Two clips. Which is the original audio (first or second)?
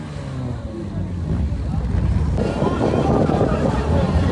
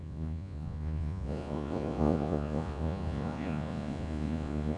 first